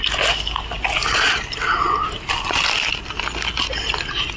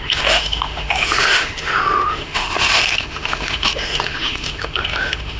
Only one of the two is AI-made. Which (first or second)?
second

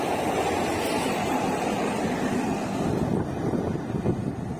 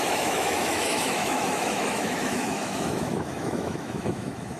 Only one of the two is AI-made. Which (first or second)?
second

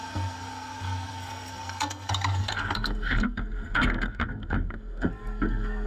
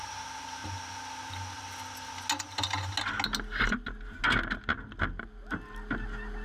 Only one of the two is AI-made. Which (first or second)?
first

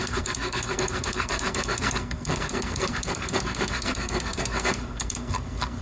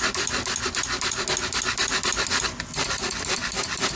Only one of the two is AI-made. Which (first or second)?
first